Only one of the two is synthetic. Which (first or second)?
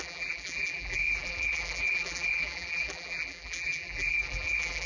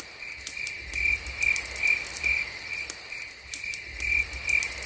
first